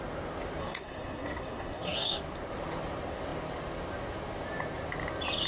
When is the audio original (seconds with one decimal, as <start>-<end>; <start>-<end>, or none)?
0.0-0.6; 2.2-5.5